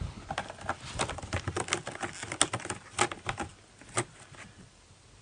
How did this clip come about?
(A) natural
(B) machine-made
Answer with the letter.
A